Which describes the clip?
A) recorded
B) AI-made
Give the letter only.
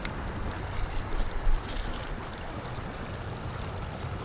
A